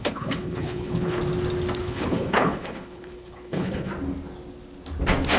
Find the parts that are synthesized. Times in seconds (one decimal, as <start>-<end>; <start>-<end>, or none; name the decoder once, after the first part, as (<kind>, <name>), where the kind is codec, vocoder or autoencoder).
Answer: 0.0-1.2 (codec, HILCodec); 1.8-3.9